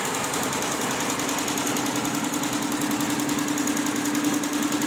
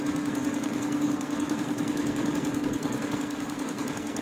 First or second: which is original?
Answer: first